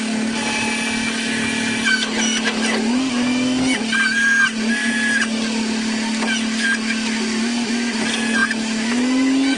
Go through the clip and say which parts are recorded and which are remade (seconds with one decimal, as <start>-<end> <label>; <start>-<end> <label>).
0.0-9.6 recorded